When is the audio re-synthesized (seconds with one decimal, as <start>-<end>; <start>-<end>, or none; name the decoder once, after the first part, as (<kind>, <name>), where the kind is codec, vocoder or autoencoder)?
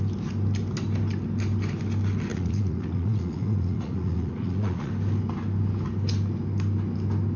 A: 2.3-4.9 (vocoder, Vocos)